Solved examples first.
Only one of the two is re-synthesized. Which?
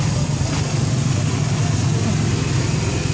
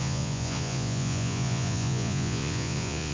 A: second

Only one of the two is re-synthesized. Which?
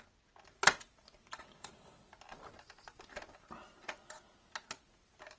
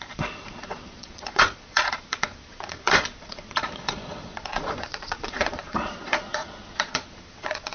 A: second